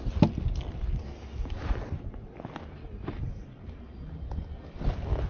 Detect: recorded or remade recorded